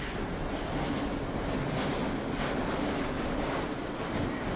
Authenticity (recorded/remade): recorded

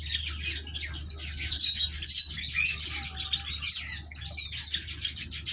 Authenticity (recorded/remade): recorded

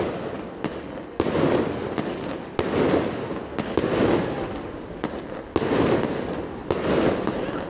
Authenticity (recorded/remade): recorded